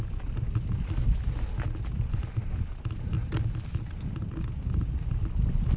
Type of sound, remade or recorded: recorded